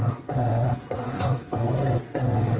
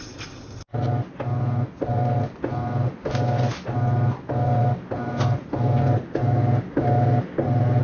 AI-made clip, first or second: first